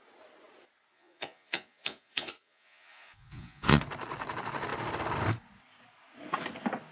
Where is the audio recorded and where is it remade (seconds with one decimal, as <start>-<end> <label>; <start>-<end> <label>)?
0.0-0.9 recorded; 0.9-3.8 remade; 3.8-6.9 recorded